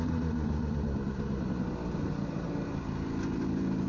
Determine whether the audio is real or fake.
real